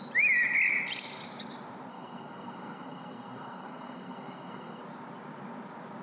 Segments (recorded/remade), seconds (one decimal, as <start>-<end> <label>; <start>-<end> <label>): 0.0-1.9 recorded; 1.9-4.8 remade; 4.8-6.0 recorded